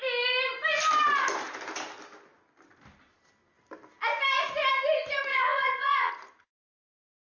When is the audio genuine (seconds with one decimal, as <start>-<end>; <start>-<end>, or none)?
0.0-5.3; 6.1-7.4

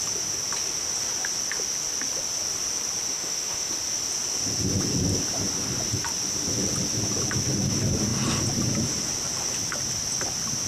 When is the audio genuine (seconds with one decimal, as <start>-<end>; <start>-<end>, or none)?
0.0-3.1; 3.7-10.7

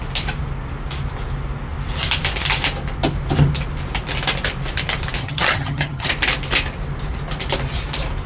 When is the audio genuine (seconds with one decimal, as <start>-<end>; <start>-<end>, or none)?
0.0-5.2; 6.1-8.3